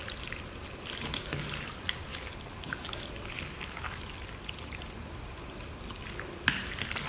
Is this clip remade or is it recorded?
recorded